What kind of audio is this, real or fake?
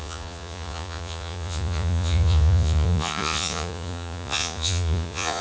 fake